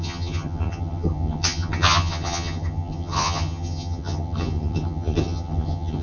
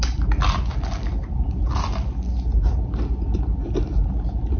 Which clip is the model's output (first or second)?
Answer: first